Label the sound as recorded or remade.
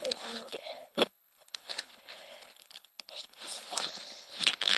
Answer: remade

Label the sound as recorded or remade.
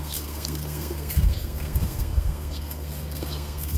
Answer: remade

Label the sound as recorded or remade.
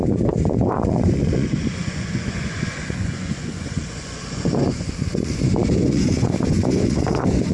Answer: remade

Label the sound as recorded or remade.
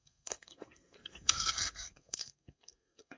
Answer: remade